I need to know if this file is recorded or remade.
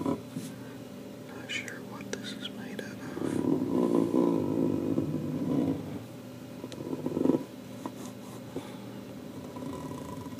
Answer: recorded